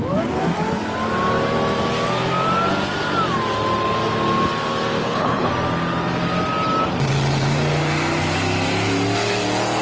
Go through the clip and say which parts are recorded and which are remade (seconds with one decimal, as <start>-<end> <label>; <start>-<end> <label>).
0.0-5.0 recorded; 5.0-5.5 remade; 5.5-9.8 recorded